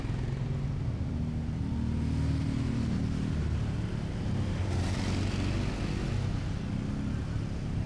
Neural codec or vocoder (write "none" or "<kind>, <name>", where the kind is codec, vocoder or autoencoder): none